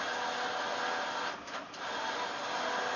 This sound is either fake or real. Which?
real